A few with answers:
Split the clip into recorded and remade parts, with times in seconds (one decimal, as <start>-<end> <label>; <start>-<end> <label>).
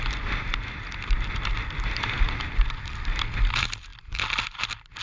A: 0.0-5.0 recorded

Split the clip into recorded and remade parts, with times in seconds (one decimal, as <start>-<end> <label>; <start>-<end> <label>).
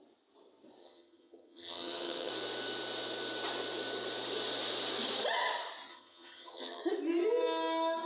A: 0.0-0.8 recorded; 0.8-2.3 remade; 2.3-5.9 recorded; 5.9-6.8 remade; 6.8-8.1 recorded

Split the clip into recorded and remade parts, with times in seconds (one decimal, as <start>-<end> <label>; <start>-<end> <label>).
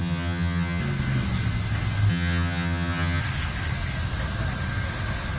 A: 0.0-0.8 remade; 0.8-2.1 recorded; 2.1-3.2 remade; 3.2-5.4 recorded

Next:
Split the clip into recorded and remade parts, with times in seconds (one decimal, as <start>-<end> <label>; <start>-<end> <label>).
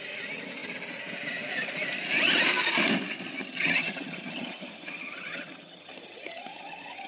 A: 0.0-3.4 recorded; 3.4-7.1 remade